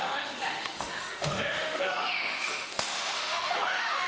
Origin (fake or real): fake